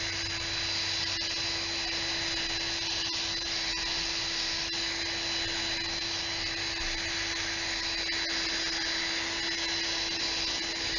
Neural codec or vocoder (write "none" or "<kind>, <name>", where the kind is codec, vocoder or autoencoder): none